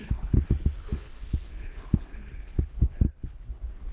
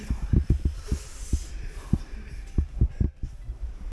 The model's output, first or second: first